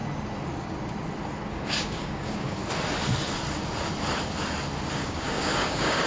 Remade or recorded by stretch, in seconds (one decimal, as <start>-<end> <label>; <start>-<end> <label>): 0.0-1.5 recorded; 1.5-2.6 remade; 2.6-4.9 recorded; 4.9-6.1 remade